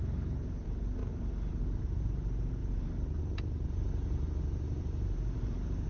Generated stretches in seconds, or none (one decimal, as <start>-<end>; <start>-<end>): 0.0-5.9